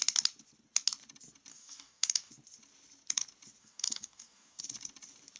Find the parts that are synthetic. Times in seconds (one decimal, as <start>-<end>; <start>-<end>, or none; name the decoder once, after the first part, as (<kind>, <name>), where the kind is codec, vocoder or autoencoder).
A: 1.5-2.3 (codec, DAC); 3.6-4.6